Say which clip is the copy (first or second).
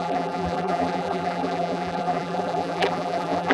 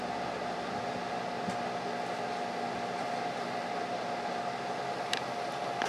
first